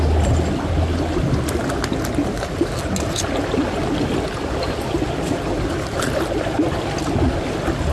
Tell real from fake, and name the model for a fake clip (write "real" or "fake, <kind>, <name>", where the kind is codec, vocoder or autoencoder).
real